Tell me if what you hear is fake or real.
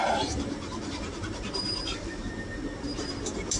fake